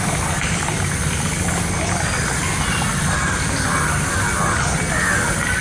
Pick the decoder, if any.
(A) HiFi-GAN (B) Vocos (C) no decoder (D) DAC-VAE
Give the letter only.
C